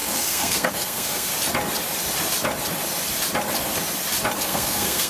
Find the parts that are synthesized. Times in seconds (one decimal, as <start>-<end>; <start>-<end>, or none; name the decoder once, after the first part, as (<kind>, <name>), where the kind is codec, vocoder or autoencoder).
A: 0.0-1.3 (codec, SNAC); 4.4-5.1